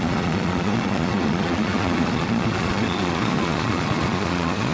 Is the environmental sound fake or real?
fake